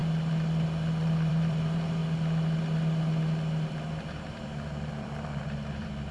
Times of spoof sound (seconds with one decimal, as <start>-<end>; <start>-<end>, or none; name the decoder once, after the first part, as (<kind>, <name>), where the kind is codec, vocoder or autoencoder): 1.3-2.0 (vocoder, BigVGAN v2); 3.9-6.1